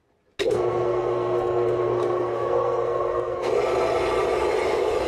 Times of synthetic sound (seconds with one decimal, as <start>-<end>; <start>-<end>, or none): 0.4-3.5